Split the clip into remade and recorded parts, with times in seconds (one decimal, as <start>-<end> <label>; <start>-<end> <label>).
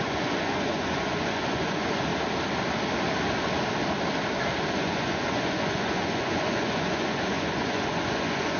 0.0-2.1 remade; 2.1-4.7 recorded; 4.7-8.6 remade